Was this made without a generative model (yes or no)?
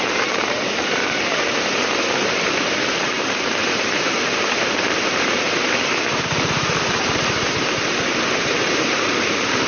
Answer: no